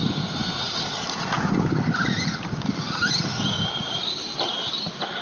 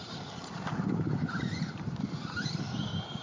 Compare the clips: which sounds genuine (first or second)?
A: first